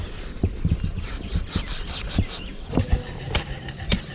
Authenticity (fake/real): real